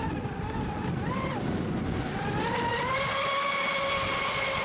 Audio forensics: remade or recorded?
recorded